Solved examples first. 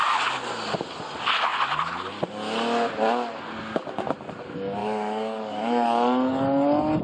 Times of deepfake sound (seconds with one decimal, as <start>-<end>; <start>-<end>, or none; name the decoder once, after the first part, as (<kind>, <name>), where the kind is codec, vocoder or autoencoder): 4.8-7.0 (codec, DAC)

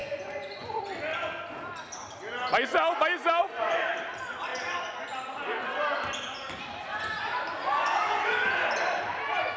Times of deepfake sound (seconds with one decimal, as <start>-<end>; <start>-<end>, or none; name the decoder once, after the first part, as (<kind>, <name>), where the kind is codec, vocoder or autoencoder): 0.0-0.8 (vocoder, Vocos); 3.4-3.9; 7.5-8.3

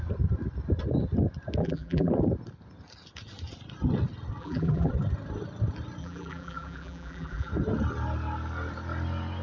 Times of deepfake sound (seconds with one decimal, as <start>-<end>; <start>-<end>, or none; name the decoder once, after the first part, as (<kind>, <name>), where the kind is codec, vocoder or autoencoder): 1.6-2.1 (vocoder, BigVGAN v2); 4.4-4.9; 6.0-7.5

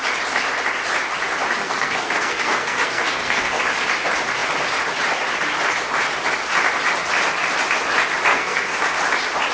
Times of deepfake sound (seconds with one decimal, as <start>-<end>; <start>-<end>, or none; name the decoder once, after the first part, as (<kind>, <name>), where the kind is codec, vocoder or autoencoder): 1.6-3.6 (codec, SNAC); 8.3-8.8

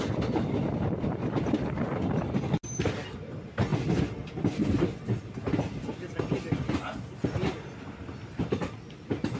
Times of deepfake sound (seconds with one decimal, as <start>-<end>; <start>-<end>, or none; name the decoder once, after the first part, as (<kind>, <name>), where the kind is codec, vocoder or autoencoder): none

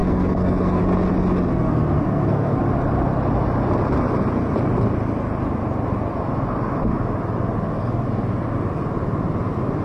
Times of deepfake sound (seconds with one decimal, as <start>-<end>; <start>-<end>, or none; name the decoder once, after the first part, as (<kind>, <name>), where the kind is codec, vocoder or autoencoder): 0.0-0.8 (codec, SNAC); 1.5-2.6